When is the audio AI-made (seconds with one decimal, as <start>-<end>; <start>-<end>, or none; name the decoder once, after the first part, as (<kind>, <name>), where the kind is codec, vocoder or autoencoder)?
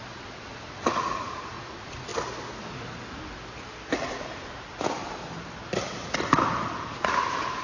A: 0.0-2.1 (vocoder, Vocos); 4.1-5.0; 6.9-7.6